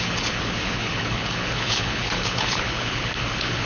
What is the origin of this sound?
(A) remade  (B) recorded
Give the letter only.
A